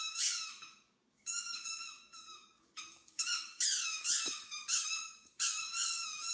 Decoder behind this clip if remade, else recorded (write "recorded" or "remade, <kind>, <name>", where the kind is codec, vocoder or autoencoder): remade, codec, DAC